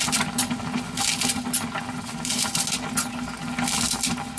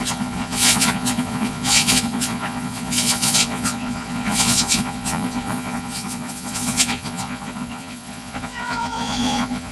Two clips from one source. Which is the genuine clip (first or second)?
first